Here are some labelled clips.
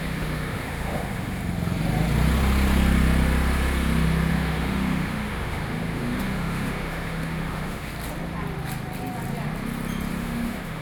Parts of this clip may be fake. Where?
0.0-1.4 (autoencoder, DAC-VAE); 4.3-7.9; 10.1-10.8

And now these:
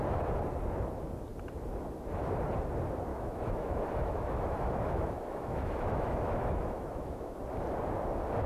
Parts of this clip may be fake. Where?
3.1-7.4 (autoencoder, DAC-VAE)

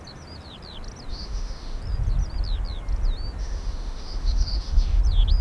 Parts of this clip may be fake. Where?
1.1-1.8 (autoencoder, DAC-VAE); 3.4-5.0

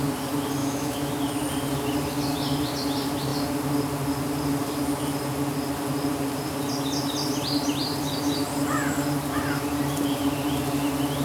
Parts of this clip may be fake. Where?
0.6-1.1 (autoencoder, DAC-VAE)

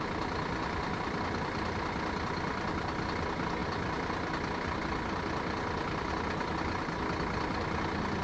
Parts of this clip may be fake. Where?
none

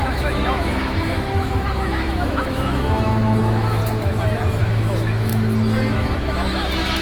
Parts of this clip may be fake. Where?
0.0-3.8 (autoencoder, DAC-VAE); 4.6-5.3; 5.9-7.0